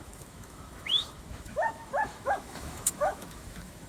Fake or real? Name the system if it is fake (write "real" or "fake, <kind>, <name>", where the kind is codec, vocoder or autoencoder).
fake, autoencoder, DAC-VAE